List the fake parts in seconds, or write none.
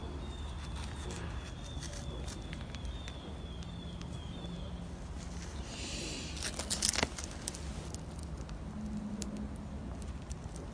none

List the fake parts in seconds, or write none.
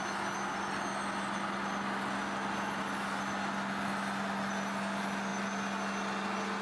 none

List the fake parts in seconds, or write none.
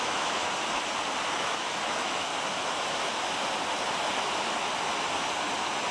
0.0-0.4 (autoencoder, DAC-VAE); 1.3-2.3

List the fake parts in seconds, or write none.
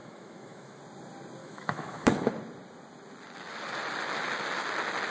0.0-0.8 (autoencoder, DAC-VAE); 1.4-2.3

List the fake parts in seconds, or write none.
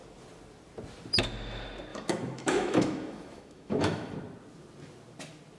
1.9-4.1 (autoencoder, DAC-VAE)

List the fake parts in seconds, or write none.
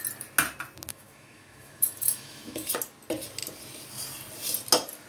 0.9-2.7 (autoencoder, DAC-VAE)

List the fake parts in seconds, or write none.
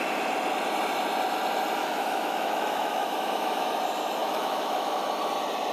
1.8-3.7 (autoencoder, DAC-VAE); 4.2-5.0